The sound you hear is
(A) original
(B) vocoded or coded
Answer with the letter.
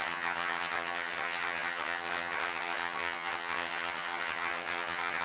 B